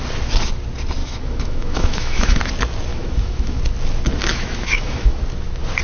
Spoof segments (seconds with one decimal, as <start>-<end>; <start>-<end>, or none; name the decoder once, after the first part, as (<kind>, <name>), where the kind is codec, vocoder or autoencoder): 1.0-2.4 (autoencoder, DAC-VAE); 2.9-3.6; 4.3-5.2